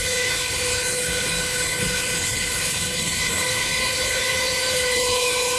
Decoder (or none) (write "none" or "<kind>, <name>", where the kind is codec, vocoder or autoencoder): codec, HILCodec